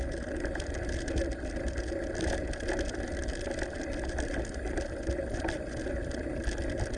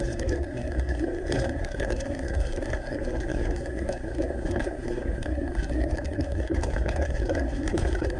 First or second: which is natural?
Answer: first